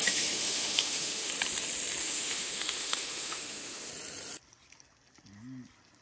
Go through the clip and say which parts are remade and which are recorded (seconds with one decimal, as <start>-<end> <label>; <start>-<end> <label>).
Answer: 0.0-1.3 remade; 1.3-2.0 recorded; 2.0-3.9 remade; 3.9-6.0 recorded